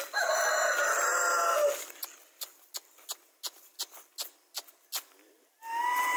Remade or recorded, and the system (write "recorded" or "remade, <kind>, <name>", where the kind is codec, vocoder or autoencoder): recorded